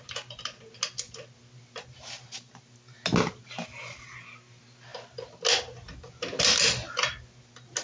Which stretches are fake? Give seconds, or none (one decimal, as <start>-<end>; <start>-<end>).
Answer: none